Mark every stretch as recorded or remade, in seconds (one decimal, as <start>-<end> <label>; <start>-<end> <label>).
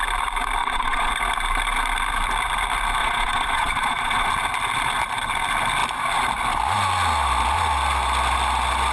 0.0-0.6 recorded; 0.6-1.1 remade; 1.1-3.0 recorded; 3.0-4.3 remade; 4.3-8.9 recorded